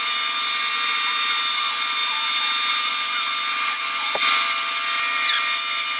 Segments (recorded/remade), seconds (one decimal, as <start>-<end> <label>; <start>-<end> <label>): 0.0-6.0 recorded